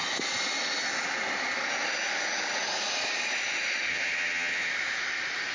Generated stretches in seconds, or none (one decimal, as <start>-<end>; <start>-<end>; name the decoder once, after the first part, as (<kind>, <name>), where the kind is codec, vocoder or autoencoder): 3.9-4.7 (vocoder, HiFi-GAN)